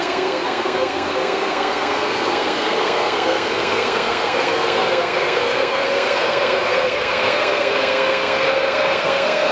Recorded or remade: remade